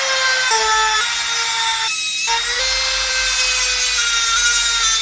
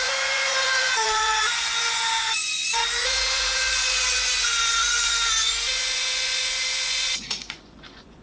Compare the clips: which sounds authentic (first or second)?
first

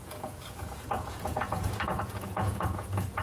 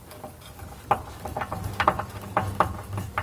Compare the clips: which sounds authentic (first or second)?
second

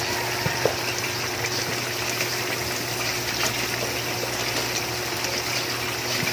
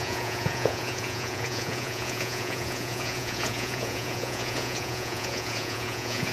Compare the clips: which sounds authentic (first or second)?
first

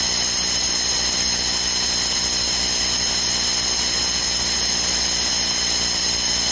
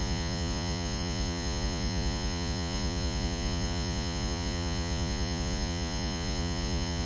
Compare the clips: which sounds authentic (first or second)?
first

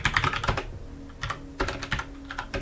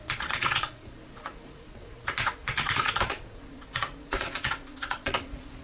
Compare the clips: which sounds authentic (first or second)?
first